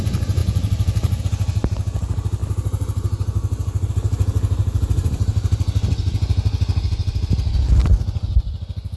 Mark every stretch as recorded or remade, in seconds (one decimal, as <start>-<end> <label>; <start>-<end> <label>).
0.0-0.4 recorded; 0.4-1.2 remade; 1.2-9.0 recorded